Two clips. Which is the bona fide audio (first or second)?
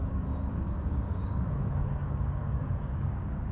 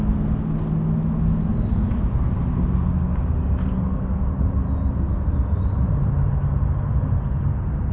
second